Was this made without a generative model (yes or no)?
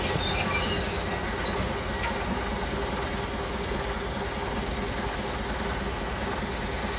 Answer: yes